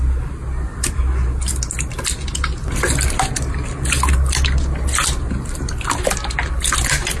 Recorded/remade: recorded